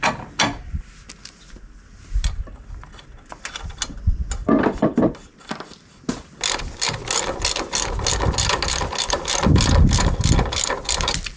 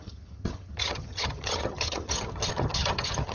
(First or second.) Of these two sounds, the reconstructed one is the second